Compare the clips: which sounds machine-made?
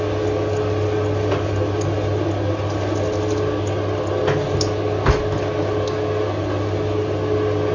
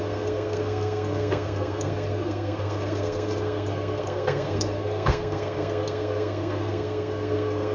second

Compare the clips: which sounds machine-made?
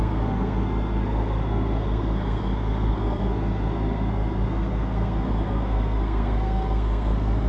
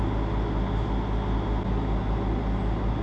first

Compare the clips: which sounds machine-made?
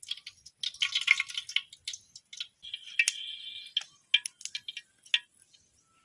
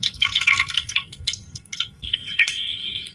second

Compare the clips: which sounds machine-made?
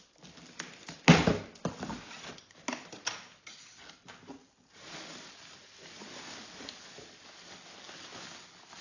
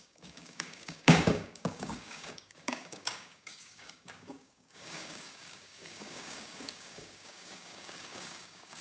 second